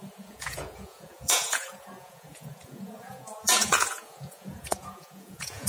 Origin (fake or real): fake